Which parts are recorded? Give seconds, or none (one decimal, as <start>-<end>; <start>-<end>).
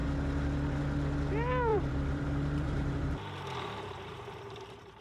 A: 0.0-1.7